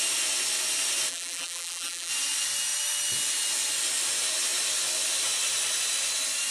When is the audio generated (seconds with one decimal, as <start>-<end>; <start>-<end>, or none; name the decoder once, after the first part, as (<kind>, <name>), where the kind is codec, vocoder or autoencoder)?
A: 1.1-2.1 (vocoder, BigVGAN v2)